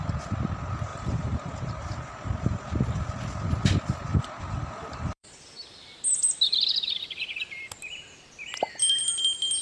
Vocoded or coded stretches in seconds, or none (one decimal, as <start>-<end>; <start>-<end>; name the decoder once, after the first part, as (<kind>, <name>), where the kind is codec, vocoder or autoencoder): 0.9-1.5 (vocoder, BigVGAN v2); 4.1-5.3